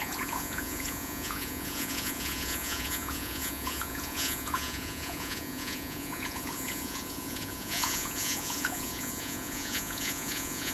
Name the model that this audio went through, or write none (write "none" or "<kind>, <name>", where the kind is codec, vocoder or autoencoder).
vocoder, Vocos